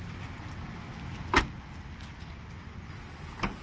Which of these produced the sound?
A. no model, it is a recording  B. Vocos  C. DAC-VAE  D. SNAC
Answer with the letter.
A